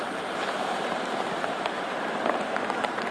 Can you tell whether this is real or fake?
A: fake